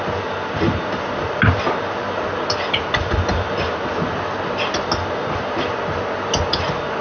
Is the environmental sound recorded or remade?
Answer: recorded